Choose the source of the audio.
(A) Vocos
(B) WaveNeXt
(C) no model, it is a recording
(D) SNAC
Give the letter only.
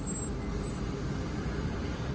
C